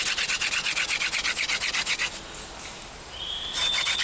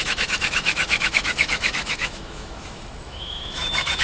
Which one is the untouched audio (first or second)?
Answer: first